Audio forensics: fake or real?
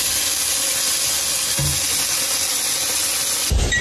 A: real